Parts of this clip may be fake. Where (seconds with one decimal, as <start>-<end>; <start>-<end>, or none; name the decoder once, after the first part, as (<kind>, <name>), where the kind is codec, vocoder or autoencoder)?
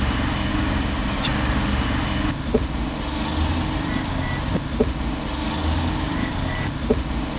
5.6-6.7 (codec, DAC)